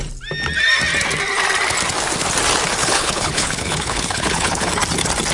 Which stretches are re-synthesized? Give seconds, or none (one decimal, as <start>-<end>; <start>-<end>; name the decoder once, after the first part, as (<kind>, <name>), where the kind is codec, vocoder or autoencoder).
2.8-4.7 (codec, HILCodec)